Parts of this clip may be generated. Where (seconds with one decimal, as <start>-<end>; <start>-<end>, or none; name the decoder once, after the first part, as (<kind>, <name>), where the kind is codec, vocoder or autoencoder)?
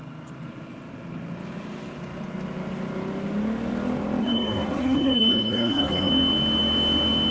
4.2-6.1 (codec, SNAC)